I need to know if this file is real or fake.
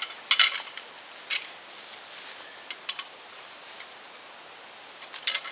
real